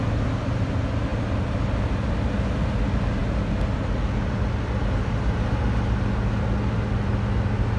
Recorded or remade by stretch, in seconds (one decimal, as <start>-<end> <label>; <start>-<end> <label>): 0.0-7.8 recorded